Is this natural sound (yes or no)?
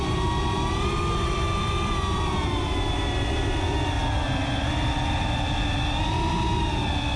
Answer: yes